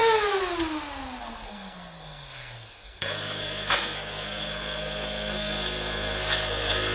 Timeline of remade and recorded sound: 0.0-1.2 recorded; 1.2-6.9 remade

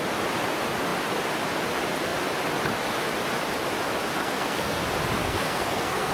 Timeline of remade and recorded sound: 0.0-4.2 recorded; 4.2-4.8 remade; 4.8-5.2 recorded; 5.2-6.1 remade

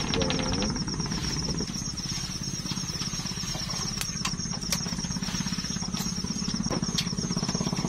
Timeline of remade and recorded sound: 0.0-7.9 recorded

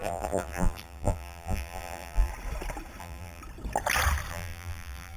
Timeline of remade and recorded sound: 0.0-2.3 remade; 2.3-3.0 recorded; 3.0-3.4 remade; 3.4-4.3 recorded; 4.3-5.2 remade